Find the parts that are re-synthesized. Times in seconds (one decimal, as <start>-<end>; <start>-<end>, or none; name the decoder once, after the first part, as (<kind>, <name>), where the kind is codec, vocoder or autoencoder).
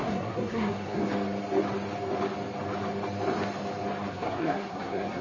0.0-1.0 (codec, SNAC); 4.1-5.2